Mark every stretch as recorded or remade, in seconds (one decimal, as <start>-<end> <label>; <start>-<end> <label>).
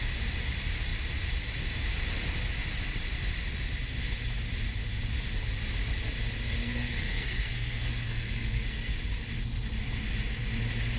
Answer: 0.0-6.6 recorded; 6.6-8.9 remade; 8.9-11.0 recorded